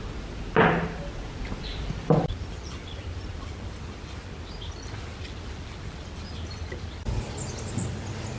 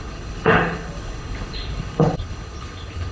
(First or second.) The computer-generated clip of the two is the second